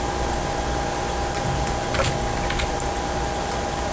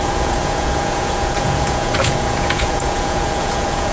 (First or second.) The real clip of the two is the first